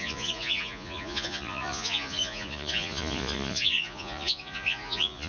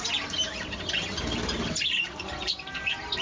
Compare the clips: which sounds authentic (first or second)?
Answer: second